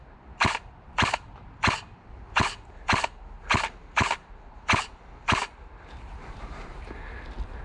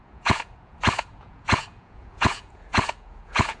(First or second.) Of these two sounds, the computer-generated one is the second